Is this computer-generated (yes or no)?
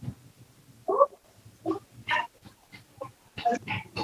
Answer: no